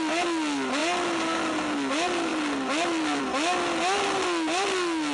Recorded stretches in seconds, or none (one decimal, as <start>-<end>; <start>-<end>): 0.0-5.1